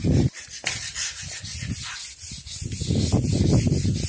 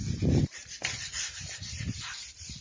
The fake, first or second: second